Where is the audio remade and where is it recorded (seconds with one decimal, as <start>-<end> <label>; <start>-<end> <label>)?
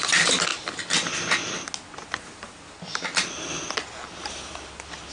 0.0-5.1 recorded